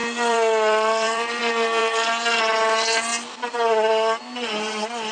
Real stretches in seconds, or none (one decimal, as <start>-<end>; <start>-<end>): 1.4-1.8; 2.4-3.1; 4.2-5.1